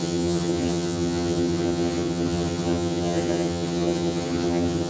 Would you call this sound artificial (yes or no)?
yes